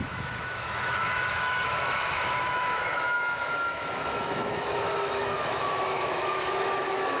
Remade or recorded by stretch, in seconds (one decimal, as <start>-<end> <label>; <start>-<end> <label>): 0.0-7.2 remade

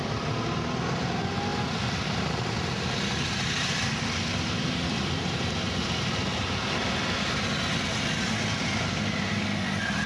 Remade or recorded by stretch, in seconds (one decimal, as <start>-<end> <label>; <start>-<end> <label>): 0.0-10.1 recorded

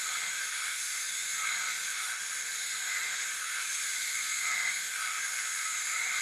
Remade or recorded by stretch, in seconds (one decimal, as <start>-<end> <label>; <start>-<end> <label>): 0.0-6.2 remade

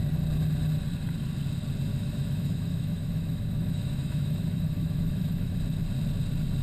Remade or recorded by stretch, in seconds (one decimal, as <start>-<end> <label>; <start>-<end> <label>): 0.0-1.9 recorded; 1.9-5.5 remade; 5.5-6.6 recorded